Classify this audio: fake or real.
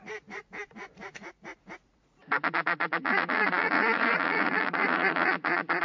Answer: fake